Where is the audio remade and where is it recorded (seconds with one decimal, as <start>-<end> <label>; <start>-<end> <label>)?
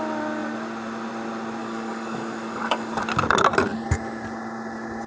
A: 0.0-1.6 recorded; 1.6-3.0 remade; 3.0-5.1 recorded